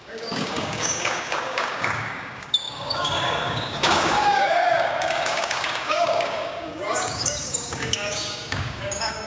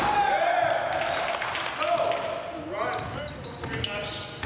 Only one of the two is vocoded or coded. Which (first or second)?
first